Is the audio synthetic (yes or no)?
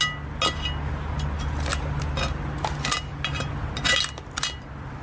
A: no